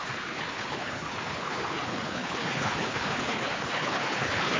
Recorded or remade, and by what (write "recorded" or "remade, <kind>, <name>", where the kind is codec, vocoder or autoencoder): remade, codec, HILCodec